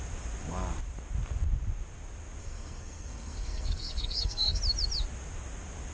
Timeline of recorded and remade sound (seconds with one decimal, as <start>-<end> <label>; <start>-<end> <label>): 0.0-2.4 recorded; 2.4-4.6 remade; 4.6-5.9 recorded

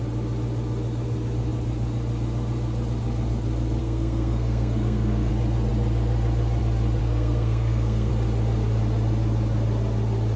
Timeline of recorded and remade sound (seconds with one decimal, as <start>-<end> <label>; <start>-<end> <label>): 0.0-3.8 recorded; 3.8-5.3 remade; 5.3-7.0 recorded; 7.0-8.1 remade; 8.1-10.4 recorded

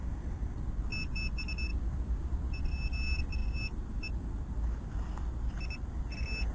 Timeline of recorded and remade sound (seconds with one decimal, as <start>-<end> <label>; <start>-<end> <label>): 0.0-6.5 recorded

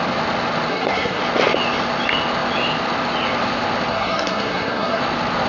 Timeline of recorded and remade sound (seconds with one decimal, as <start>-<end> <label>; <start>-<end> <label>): 0.0-0.7 recorded; 0.7-1.2 remade; 1.2-3.9 recorded; 3.9-5.0 remade; 5.0-5.5 recorded

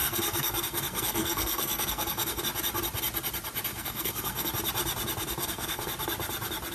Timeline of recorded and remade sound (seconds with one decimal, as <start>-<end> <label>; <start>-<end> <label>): 0.0-2.4 remade; 2.4-3.7 recorded; 3.7-4.5 remade; 4.5-5.4 recorded; 5.4-5.9 remade; 5.9-6.7 recorded

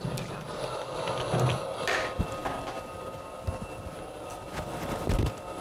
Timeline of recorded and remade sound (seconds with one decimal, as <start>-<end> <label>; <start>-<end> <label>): 0.0-5.6 recorded

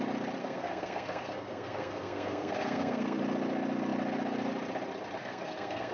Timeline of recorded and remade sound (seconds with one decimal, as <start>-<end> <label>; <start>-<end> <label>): 0.0-0.4 recorded; 0.4-3.2 remade; 3.2-5.2 recorded; 5.2-5.9 remade